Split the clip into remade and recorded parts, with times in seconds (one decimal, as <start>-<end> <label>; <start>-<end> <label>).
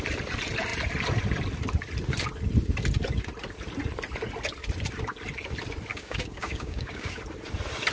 0.0-5.9 recorded; 5.9-7.2 remade; 7.2-7.9 recorded